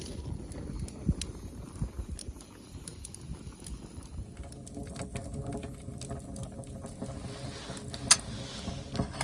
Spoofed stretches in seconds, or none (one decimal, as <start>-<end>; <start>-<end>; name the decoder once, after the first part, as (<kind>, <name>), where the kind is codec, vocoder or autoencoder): none